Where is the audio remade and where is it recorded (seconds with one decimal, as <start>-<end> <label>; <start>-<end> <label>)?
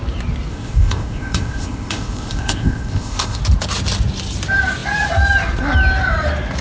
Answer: 0.0-0.5 recorded; 0.5-3.4 remade; 3.4-6.6 recorded